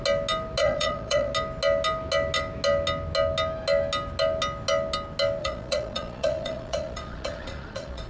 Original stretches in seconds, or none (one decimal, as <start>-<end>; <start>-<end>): 0.0-0.6; 1.3-5.4

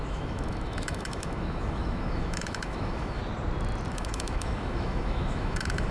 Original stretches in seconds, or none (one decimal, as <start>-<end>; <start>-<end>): 3.2-3.9

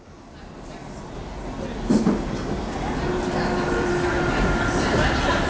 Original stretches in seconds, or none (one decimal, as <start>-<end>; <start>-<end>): 0.0-5.5

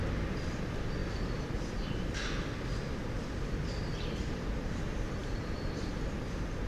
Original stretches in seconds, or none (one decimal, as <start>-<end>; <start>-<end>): 0.0-5.2; 6.2-6.7

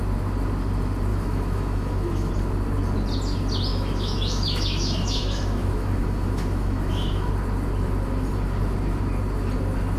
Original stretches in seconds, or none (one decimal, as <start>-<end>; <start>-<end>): 0.0-1.1; 2.3-3.7; 7.3-10.0